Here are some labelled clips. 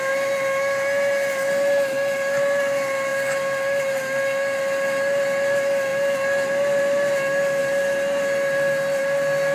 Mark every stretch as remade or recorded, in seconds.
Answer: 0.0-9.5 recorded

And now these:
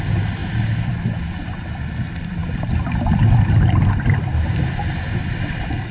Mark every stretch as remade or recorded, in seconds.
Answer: 0.0-5.9 recorded

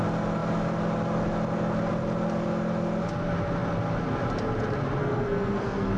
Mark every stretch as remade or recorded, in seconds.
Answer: 0.0-5.0 recorded; 5.0-6.0 remade

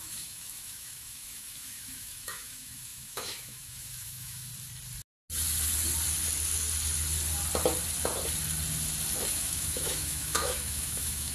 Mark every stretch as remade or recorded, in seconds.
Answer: 0.0-4.5 remade; 4.5-9.3 recorded; 9.3-11.3 remade